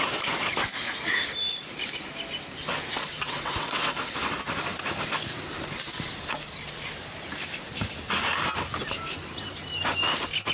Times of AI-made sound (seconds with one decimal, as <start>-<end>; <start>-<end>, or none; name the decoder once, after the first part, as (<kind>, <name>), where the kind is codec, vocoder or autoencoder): 3.1-4.1 (vocoder, WaveNeXt)